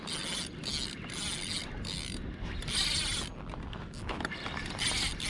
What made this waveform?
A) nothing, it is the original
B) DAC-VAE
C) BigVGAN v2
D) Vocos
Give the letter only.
A